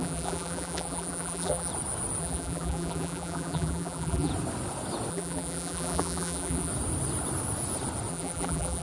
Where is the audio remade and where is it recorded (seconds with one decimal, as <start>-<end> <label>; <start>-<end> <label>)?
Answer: 0.0-1.7 remade; 1.7-2.2 recorded; 2.2-4.3 remade; 4.3-5.1 recorded; 5.1-6.7 remade; 6.7-8.1 recorded; 8.1-8.8 remade